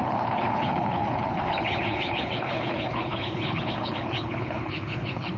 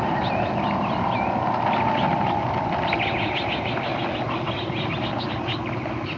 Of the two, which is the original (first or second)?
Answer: second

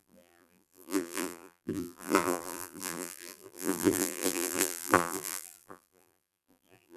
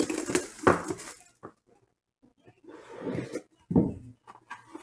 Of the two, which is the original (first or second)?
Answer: second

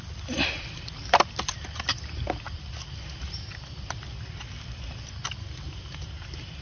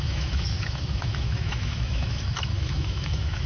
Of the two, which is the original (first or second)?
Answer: first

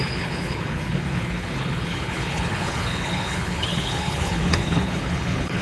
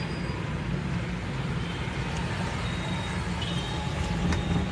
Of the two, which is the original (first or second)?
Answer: second